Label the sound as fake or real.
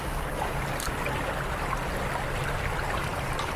real